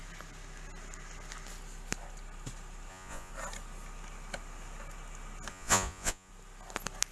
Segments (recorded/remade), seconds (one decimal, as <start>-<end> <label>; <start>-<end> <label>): 0.0-2.9 recorded; 2.9-3.3 remade; 3.3-5.5 recorded; 5.5-6.3 remade; 6.3-7.1 recorded